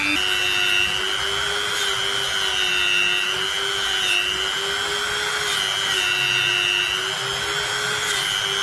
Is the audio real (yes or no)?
yes